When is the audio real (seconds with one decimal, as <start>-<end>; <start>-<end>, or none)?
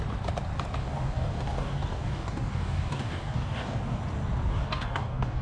0.0-0.8; 4.0-4.5